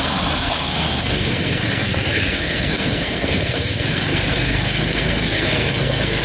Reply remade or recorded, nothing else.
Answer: remade